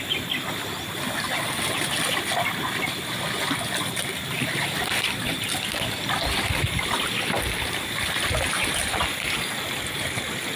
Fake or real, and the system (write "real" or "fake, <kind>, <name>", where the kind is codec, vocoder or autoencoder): real